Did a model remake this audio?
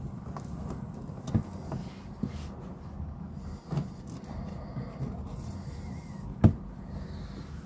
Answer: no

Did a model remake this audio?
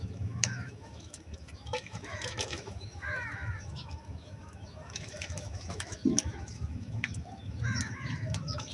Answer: yes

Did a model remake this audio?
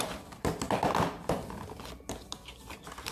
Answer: no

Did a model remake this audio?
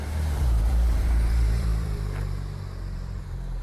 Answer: yes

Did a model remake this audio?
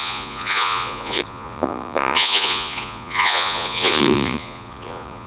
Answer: yes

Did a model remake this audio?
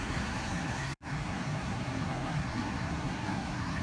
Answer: yes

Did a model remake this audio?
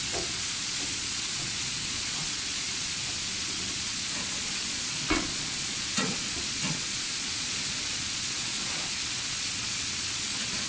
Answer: yes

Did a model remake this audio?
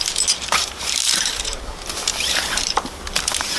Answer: yes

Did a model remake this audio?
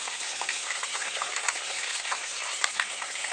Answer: yes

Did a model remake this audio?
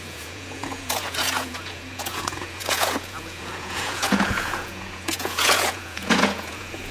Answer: yes